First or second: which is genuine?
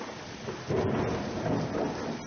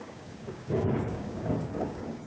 first